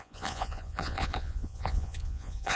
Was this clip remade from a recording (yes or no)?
yes